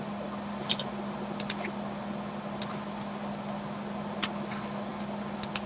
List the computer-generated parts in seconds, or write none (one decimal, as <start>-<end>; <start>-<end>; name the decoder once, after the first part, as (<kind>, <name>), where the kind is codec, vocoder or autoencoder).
none